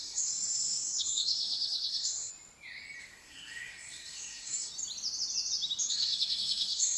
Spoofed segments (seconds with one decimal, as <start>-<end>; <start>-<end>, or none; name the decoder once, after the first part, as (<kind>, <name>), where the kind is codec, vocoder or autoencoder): 0.0-2.3 (codec, SNAC); 3.0-4.7; 5.8-7.0